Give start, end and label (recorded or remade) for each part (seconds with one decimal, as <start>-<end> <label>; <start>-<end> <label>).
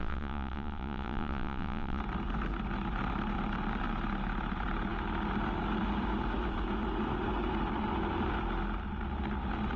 0.0-2.0 remade; 2.0-9.8 recorded